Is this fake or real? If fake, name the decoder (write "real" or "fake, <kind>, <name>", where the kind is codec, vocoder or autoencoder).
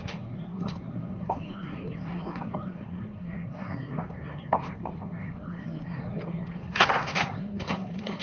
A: fake, codec, SNAC